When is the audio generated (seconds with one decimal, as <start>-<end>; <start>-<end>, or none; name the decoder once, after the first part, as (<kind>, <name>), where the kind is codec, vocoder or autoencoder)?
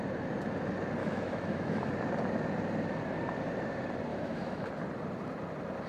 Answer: 1.0-1.9 (autoencoder, DAC-VAE); 4.1-4.7